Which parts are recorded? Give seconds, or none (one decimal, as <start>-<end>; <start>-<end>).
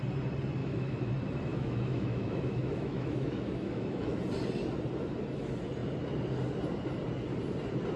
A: 0.0-0.6; 1.1-1.5; 4.2-8.0